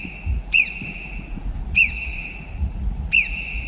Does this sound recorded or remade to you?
remade